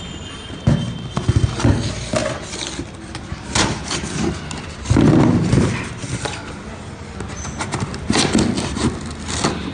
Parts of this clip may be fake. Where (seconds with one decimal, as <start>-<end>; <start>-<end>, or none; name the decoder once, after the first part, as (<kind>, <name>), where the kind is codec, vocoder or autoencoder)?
none